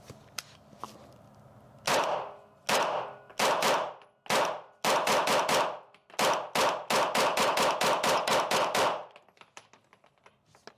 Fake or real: real